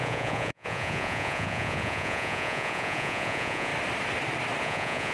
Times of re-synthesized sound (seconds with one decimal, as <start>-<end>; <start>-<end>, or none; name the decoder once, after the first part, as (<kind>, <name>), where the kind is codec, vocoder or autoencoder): 0.0-3.7 (vocoder, Vocos); 4.6-5.1